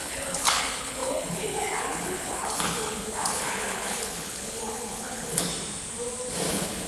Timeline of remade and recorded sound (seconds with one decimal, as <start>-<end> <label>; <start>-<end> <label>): 0.0-5.5 remade; 5.5-6.5 recorded; 6.5-6.9 remade